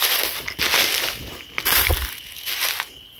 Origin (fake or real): real